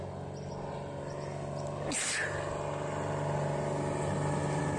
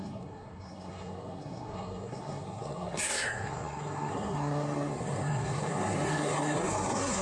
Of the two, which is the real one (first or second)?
first